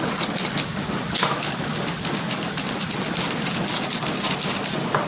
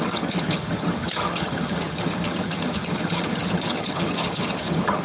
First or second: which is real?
first